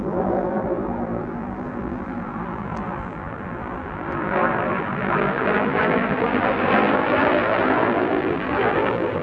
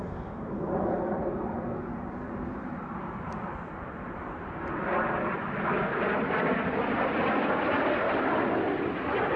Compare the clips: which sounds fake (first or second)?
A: first